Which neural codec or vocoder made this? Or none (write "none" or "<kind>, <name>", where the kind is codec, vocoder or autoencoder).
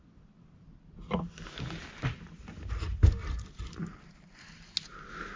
none